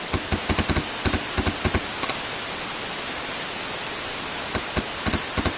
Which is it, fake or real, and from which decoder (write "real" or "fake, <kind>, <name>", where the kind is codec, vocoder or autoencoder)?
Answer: real